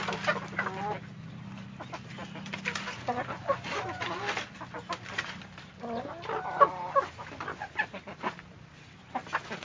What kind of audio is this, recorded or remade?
recorded